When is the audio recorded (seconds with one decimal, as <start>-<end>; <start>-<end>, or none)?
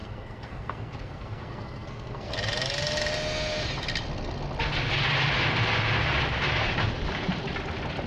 2.3-8.1